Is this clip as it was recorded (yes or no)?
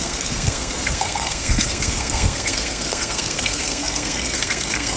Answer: no